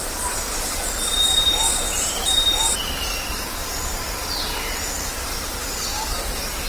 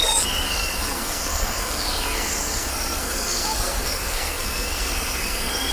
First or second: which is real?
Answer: first